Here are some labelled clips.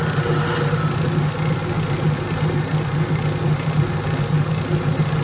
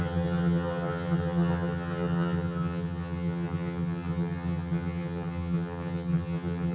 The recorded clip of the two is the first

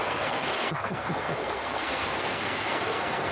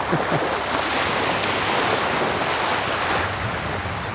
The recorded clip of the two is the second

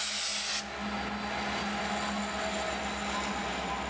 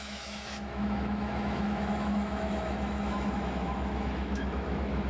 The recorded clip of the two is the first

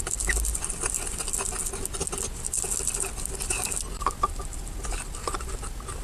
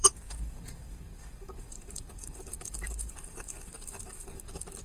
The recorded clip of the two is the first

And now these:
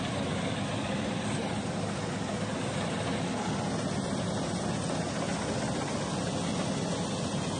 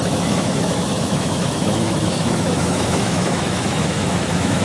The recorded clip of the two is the first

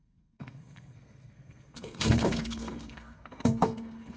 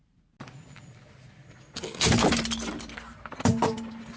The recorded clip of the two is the second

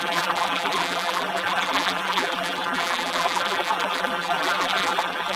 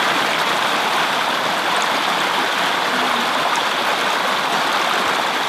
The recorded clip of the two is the second